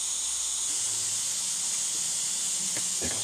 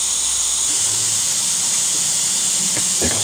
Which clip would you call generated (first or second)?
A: second